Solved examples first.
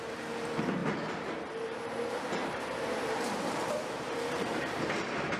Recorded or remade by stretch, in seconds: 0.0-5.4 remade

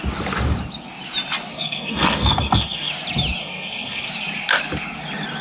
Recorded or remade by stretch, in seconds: 0.0-1.5 recorded; 1.5-2.9 remade; 2.9-3.4 recorded; 3.4-4.1 remade; 4.1-5.4 recorded